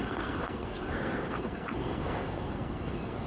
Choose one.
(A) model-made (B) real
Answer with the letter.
A